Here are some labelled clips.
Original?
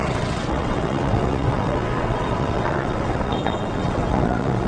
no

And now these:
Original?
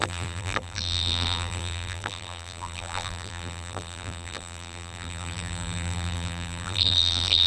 no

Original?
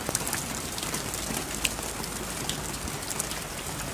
yes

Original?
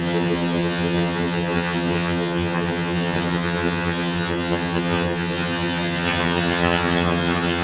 no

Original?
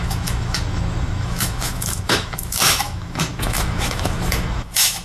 no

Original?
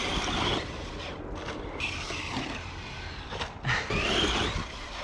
yes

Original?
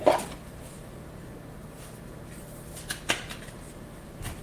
no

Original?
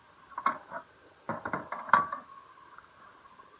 yes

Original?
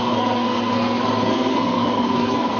no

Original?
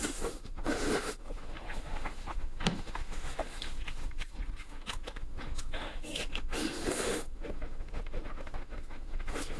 no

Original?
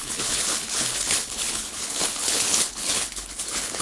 no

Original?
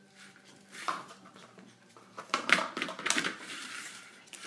no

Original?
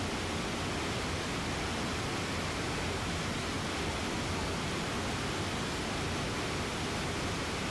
yes